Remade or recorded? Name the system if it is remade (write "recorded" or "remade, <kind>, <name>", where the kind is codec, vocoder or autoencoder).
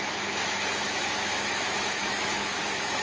remade, autoencoder, DAC-VAE